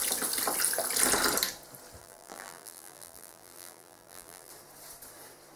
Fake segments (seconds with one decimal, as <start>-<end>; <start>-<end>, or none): 2.0-4.5